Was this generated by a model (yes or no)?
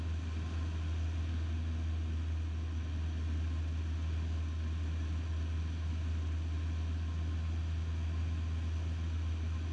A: no